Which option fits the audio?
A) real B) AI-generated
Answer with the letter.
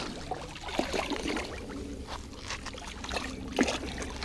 A